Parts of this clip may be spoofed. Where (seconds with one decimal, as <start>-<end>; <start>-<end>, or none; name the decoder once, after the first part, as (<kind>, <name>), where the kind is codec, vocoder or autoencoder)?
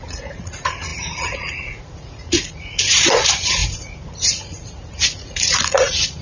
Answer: 0.0-6.2 (vocoder, Vocos)